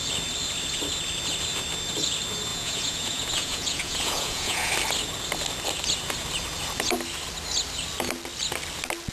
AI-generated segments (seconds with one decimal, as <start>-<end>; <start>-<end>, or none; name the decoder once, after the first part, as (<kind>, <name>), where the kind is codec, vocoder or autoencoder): 2.5-4.7 (vocoder, Vocos)